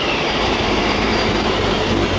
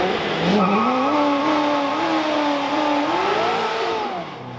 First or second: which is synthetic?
first